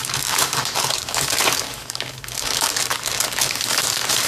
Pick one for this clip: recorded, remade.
remade